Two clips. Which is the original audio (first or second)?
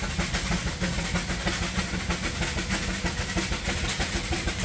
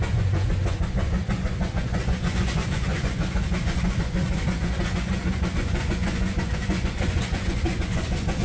first